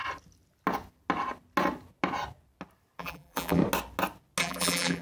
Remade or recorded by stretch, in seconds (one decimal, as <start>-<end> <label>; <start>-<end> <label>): 0.0-3.0 recorded; 3.0-3.6 remade; 3.6-4.4 recorded; 4.4-5.0 remade